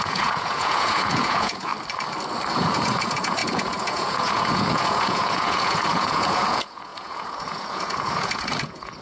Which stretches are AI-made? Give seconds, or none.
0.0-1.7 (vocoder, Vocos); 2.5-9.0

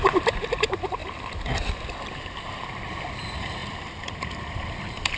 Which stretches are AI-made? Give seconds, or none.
0.0-1.0 (vocoder, BigVGAN v2); 2.4-3.6; 4.5-5.2

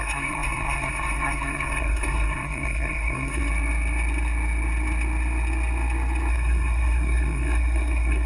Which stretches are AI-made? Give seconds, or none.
0.0-3.4 (codec, SNAC); 6.3-8.3

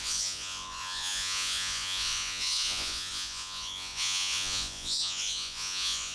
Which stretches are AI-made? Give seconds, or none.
0.0-6.1 (vocoder, Vocos)

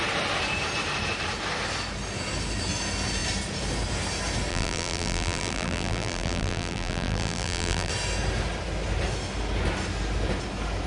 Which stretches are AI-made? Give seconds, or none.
4.5-7.9 (vocoder, BigVGAN v2)